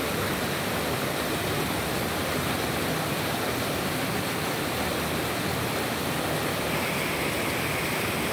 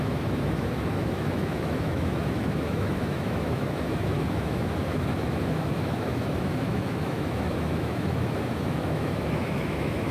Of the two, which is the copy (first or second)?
second